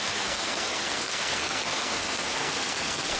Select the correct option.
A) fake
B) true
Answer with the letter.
A